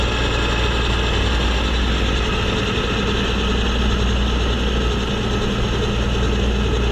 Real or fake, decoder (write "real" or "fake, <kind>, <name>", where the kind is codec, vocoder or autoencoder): real